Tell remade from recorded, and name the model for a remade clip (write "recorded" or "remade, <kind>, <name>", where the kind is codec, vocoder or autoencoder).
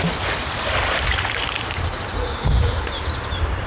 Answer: recorded